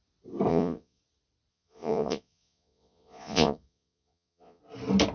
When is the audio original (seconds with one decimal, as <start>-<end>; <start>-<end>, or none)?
0.0-0.5; 1.0-1.5; 4.6-5.1